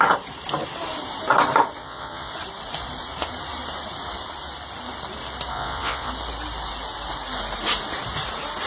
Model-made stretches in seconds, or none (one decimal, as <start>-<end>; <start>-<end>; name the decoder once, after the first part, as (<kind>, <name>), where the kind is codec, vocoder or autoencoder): 1.8-2.3 (vocoder, Vocos); 5.5-6.1